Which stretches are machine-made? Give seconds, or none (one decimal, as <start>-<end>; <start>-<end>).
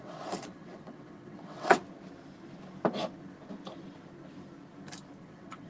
0.0-1.8; 5.2-5.7